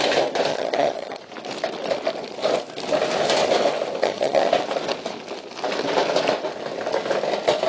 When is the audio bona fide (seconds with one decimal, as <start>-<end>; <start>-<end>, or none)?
0.0-0.5; 1.2-4.0; 4.5-7.7